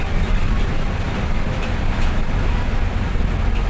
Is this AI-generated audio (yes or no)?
no